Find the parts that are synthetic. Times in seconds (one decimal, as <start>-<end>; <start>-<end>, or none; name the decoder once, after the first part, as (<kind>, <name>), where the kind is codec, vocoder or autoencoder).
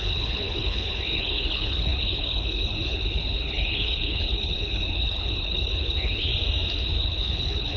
0.0-6.3 (codec, HILCodec); 7.0-7.8